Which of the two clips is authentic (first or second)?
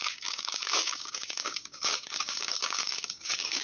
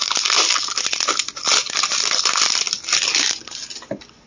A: second